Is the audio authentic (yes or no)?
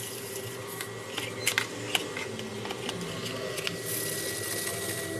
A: yes